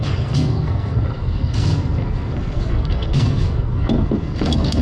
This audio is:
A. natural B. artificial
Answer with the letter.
B